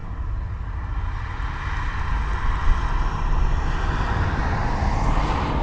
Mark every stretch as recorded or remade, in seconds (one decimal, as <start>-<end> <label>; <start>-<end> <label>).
0.0-5.6 recorded

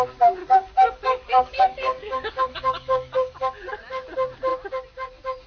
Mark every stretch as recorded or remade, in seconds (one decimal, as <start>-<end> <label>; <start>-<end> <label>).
0.0-0.4 recorded; 0.4-3.7 remade; 3.7-5.5 recorded

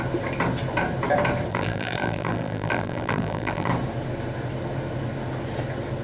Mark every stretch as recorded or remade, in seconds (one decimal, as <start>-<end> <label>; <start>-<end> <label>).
0.0-1.5 recorded; 1.5-3.7 remade; 3.7-6.0 recorded